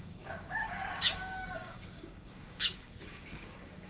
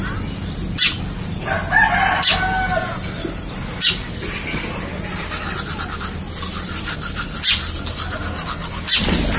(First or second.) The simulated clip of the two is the first